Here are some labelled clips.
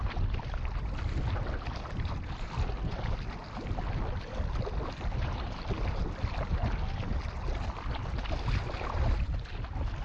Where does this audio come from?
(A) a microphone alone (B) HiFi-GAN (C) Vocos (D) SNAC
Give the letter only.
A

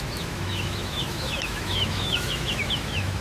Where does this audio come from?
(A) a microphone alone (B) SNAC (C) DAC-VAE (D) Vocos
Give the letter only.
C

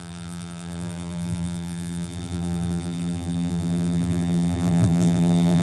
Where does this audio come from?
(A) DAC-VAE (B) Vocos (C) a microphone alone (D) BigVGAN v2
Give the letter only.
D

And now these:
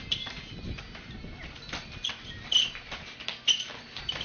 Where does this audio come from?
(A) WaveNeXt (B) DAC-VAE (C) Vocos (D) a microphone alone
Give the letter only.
D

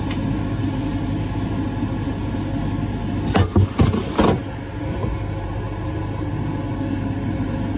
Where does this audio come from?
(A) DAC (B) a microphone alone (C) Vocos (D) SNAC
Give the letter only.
B